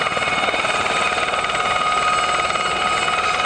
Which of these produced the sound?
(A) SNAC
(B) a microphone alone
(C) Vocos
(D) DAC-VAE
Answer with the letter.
B